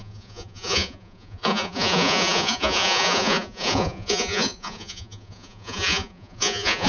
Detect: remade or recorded remade